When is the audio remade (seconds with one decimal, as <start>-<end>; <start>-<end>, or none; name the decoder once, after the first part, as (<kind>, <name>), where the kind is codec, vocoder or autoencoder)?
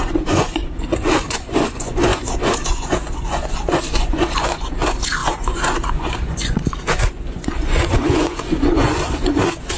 0.0-0.6 (vocoder, Vocos); 1.2-9.8